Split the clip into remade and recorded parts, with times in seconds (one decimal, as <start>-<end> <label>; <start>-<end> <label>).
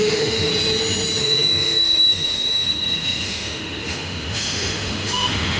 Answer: 0.0-0.5 remade; 0.5-1.2 recorded; 1.2-5.6 remade